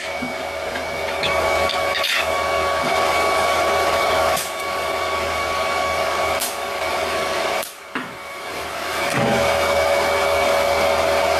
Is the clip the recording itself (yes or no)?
no